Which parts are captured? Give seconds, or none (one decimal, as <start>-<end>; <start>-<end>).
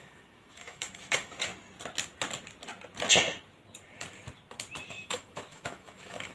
1.5-4.9